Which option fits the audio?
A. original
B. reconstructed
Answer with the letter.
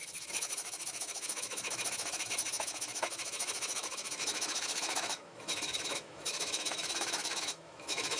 B